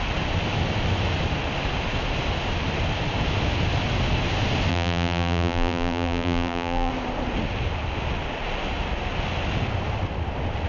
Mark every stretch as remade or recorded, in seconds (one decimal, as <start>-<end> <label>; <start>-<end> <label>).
0.0-4.7 recorded; 4.7-6.9 remade; 6.9-10.7 recorded